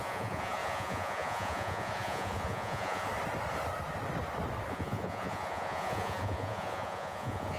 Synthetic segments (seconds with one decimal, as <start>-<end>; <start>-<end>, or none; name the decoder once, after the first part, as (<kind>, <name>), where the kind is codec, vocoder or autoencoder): 0.0-3.1 (vocoder, Vocos); 4.7-7.6